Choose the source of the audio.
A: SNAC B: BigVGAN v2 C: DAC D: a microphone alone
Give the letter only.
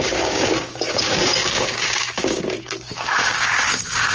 C